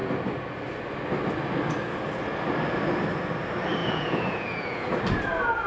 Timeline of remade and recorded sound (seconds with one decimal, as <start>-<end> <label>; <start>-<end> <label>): 0.0-3.8 recorded; 3.8-4.9 remade; 4.9-5.7 recorded